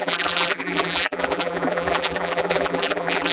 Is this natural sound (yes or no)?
no